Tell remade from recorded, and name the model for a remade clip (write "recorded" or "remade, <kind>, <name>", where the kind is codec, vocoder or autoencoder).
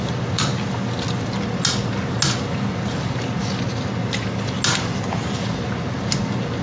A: recorded